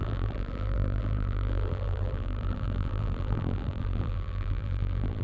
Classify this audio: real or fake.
fake